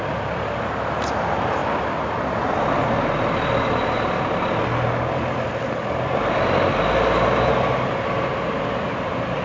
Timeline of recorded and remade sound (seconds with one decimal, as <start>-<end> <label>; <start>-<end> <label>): 0.0-9.4 recorded